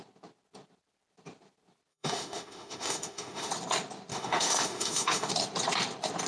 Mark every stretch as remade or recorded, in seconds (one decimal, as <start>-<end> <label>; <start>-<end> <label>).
0.0-1.9 recorded; 1.9-3.5 remade; 3.5-4.1 recorded; 4.1-5.3 remade; 5.3-6.3 recorded